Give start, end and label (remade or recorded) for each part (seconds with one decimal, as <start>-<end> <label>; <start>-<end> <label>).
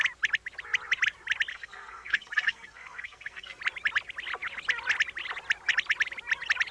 0.0-1.5 recorded; 1.5-3.6 remade; 3.6-6.7 recorded